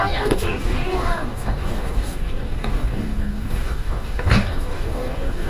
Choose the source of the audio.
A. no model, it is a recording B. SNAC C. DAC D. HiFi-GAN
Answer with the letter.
C